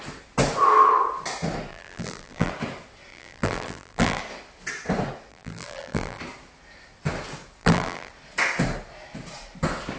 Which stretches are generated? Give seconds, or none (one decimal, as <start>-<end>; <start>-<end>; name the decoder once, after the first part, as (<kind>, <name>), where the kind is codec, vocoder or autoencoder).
1.7-2.5 (vocoder, BigVGAN v2); 3.1-4.2; 5.3-6.2; 7.6-8.1